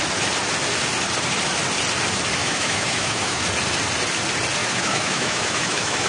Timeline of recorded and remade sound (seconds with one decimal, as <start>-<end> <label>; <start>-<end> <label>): 0.0-2.4 recorded; 2.4-3.4 remade; 3.4-4.6 recorded; 4.6-6.1 remade

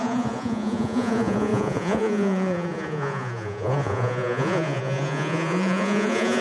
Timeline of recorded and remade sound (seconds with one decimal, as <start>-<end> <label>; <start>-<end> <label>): 0.0-6.4 remade